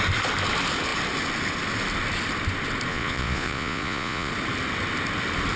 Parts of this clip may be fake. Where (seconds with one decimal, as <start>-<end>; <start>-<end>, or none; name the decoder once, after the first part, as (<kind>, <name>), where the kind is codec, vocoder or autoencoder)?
2.9-4.3 (vocoder, Vocos)